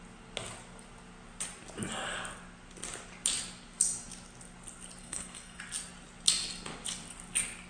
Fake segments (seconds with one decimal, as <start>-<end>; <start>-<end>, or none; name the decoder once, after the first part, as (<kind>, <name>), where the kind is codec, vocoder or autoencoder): 5.0-5.6 (codec, SNAC)